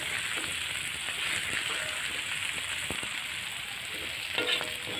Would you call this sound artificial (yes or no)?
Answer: no